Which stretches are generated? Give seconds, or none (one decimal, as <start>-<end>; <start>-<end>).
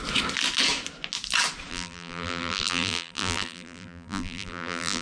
1.7-5.0